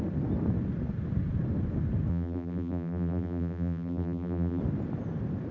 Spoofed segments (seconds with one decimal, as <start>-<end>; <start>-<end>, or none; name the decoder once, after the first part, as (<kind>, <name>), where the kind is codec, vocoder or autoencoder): 2.1-4.6 (vocoder, BigVGAN v2)